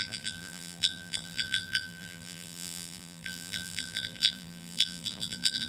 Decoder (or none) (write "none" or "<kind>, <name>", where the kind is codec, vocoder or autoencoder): vocoder, BigVGAN v2